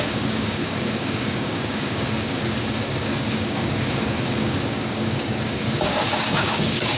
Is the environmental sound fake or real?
fake